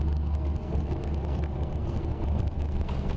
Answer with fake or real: fake